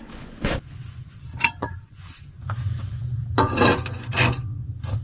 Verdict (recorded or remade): remade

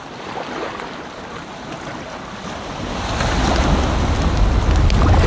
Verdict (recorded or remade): recorded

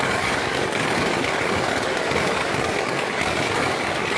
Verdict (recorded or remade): remade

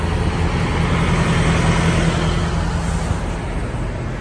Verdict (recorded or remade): recorded